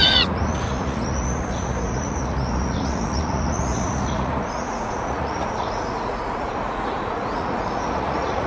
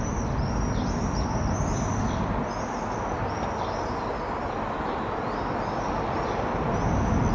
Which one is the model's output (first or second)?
first